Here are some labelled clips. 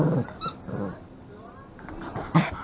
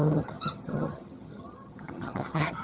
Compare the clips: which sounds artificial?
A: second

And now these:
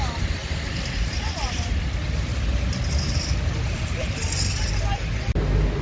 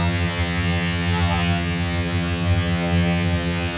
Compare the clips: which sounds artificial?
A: second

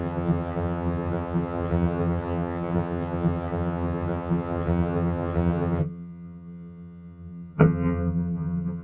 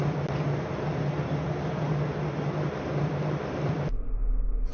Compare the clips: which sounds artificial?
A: first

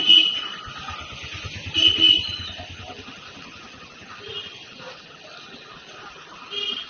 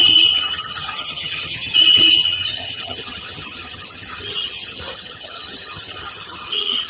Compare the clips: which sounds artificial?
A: second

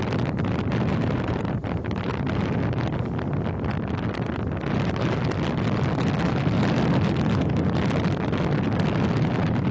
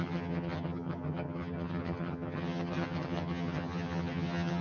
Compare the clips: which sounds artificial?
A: second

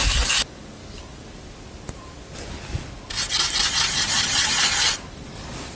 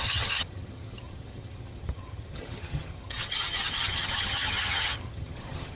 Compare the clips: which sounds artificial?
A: second